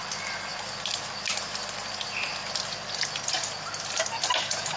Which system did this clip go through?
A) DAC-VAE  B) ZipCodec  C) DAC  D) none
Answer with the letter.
D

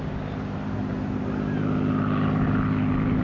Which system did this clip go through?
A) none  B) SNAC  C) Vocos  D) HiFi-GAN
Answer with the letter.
A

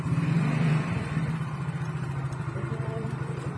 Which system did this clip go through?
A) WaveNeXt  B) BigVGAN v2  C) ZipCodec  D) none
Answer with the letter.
B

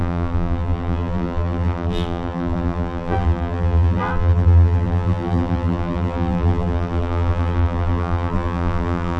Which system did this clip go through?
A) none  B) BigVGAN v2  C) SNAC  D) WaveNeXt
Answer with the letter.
B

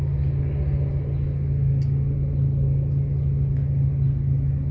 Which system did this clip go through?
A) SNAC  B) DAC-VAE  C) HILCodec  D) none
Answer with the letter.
D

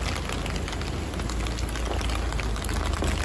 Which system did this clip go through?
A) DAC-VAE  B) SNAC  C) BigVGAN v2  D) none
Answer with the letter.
D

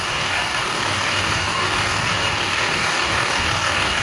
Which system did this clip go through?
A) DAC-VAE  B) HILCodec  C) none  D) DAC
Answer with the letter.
D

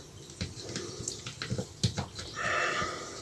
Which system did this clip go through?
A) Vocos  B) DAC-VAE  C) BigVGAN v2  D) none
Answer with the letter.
D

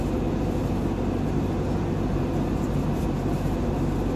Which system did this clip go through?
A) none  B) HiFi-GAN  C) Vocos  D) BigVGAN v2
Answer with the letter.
A